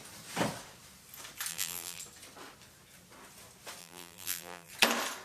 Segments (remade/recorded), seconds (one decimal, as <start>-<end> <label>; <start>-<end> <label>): 0.0-1.5 recorded; 1.5-2.0 remade; 2.0-3.8 recorded; 3.8-4.7 remade; 4.7-5.2 recorded